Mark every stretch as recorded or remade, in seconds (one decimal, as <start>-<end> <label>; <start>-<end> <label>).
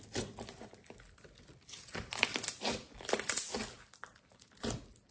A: 0.0-5.1 recorded